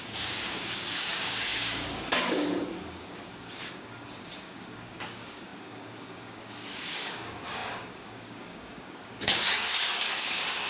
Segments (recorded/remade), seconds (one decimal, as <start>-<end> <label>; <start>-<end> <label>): 0.0-10.7 remade